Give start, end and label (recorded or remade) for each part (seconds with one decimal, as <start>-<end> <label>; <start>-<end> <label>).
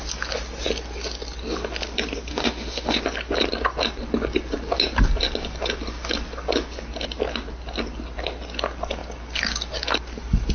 0.0-2.3 recorded; 2.3-3.0 remade; 3.0-10.5 recorded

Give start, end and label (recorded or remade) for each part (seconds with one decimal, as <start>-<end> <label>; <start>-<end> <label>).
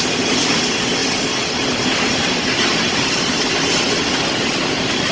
0.0-5.1 recorded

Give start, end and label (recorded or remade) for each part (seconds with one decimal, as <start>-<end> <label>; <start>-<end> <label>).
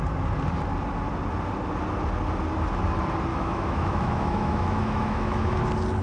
0.0-3.3 recorded; 3.3-5.6 remade; 5.6-6.0 recorded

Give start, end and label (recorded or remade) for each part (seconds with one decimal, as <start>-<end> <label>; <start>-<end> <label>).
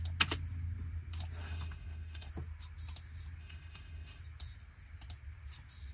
0.0-1.4 recorded; 1.4-2.3 remade; 2.3-3.4 recorded; 3.4-4.2 remade; 4.2-5.9 recorded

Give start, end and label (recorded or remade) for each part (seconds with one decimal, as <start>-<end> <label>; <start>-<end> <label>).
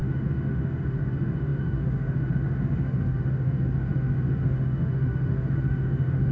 0.0-6.3 remade